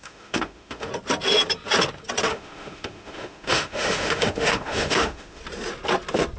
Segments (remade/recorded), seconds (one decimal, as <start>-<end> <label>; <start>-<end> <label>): 0.0-0.9 remade; 0.9-2.3 recorded; 2.3-5.4 remade; 5.4-6.4 recorded